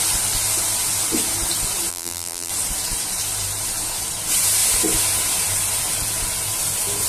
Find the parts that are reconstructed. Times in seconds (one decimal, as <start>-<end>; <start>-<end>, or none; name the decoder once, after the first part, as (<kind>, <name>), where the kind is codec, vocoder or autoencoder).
1.9-2.5 (vocoder, BigVGAN v2)